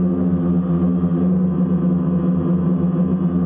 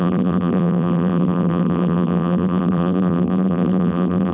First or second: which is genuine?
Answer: first